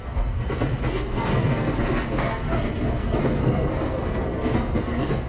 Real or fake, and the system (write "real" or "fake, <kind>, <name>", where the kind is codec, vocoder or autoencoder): fake, codec, SNAC